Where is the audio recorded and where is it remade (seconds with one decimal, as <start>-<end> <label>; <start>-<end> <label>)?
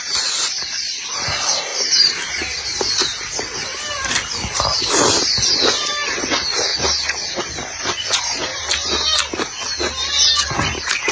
0.0-1.7 remade; 1.7-3.9 recorded; 3.9-6.7 remade; 6.7-7.4 recorded; 7.4-8.5 remade; 8.5-11.1 recorded